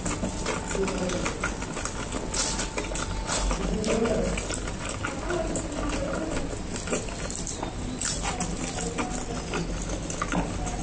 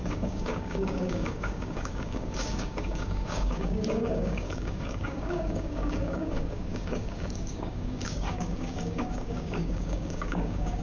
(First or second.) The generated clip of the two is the second